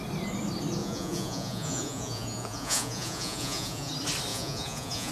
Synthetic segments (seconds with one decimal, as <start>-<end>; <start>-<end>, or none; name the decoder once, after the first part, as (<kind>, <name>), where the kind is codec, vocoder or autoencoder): 0.8-3.9 (vocoder, Vocos); 4.3-5.1